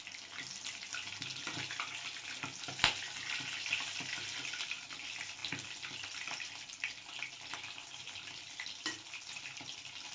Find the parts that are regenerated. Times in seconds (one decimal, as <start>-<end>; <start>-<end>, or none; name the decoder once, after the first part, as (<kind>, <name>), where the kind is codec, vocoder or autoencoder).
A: none